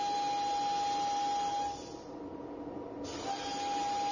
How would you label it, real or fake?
real